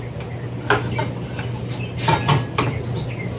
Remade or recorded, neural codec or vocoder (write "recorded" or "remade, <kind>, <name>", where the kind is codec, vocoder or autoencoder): recorded